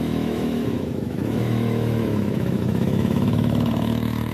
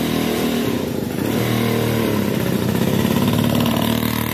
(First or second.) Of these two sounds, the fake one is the first